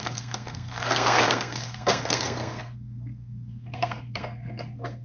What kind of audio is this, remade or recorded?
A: remade